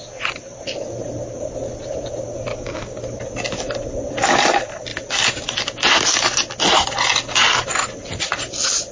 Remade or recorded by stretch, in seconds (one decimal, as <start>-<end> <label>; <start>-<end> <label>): 0.0-2.5 recorded; 2.5-3.0 remade; 3.0-8.9 recorded